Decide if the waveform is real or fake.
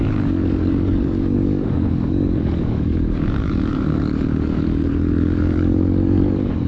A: fake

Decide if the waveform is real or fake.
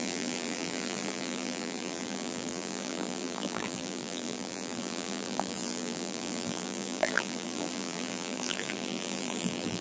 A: fake